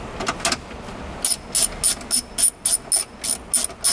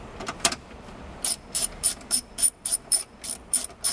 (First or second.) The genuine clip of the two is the first